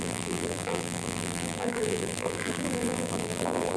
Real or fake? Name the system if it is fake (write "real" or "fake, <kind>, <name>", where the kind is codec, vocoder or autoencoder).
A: fake, vocoder, BigVGAN v2